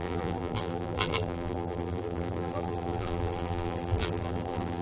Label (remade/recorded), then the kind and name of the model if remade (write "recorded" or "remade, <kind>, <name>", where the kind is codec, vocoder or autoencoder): remade, vocoder, BigVGAN v2